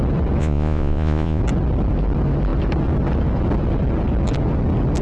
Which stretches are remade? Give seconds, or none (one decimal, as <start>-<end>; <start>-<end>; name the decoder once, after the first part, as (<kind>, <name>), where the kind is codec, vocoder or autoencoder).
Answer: 0.4-1.4 (vocoder, Vocos)